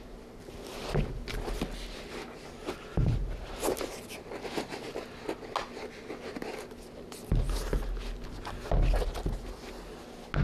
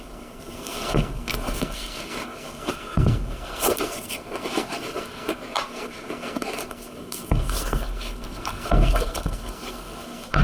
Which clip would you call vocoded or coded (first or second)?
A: second